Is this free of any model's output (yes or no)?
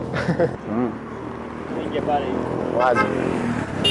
yes